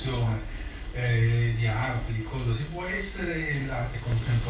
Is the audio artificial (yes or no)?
yes